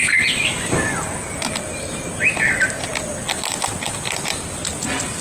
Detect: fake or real real